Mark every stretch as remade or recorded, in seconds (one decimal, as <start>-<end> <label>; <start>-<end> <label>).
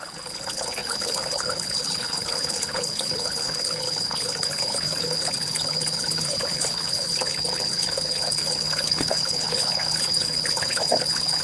0.0-11.4 remade